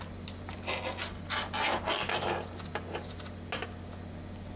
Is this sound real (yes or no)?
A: yes